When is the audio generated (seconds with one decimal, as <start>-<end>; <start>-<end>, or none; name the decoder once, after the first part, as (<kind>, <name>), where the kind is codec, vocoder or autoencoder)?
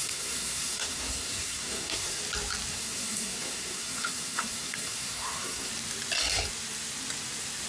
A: 0.0-2.2 (codec, SNAC); 2.7-5.7